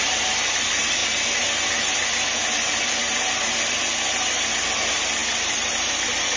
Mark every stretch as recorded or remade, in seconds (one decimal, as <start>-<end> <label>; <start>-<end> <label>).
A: 0.0-6.4 recorded